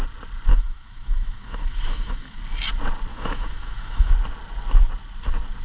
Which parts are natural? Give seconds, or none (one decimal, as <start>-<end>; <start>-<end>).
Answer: 0.0-0.5; 2.4-3.1; 4.1-5.6